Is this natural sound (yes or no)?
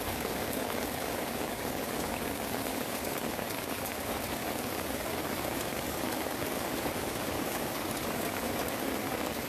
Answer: no